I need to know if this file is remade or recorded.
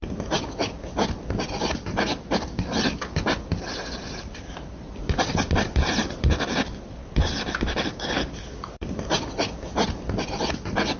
recorded